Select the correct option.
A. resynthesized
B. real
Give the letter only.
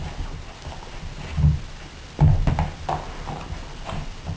B